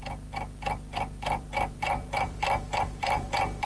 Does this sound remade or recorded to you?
remade